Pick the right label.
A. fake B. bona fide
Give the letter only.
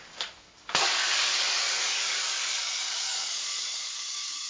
A